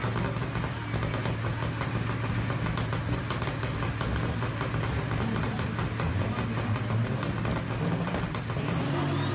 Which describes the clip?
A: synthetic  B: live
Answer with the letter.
B